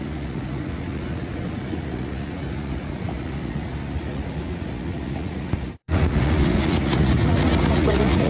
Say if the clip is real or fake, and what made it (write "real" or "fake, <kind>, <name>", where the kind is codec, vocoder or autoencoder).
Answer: fake, vocoder, Vocos